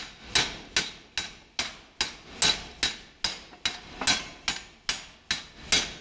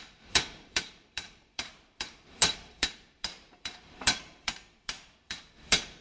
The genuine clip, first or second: first